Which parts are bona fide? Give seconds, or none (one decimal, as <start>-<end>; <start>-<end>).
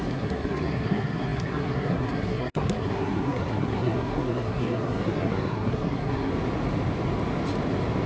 6.3-8.1